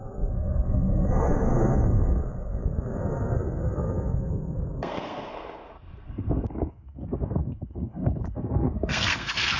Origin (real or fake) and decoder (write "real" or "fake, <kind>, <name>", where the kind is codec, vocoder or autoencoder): fake, codec, SNAC